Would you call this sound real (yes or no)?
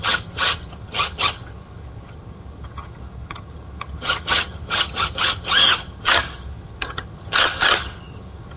no